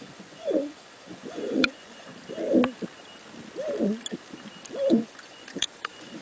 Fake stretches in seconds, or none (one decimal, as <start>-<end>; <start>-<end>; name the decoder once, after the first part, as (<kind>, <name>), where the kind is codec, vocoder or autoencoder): 0.0-2.1 (vocoder, Vocos); 4.9-6.2